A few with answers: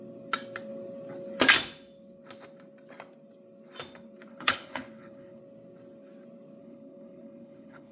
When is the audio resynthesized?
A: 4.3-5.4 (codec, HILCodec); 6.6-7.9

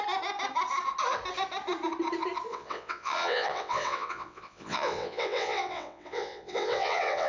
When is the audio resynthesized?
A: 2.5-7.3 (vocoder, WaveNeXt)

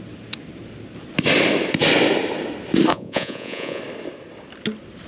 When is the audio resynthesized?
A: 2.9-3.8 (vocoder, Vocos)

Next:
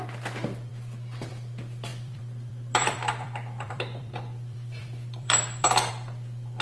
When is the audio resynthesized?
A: 1.9-5.9 (vocoder, BigVGAN v2)

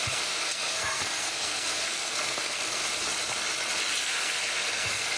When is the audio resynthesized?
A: 0.0-2.8 (codec, SNAC); 4.0-5.2